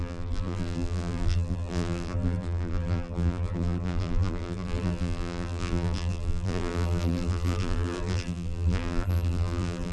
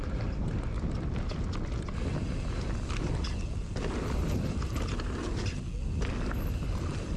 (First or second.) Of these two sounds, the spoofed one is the first